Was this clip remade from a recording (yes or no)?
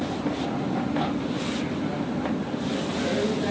no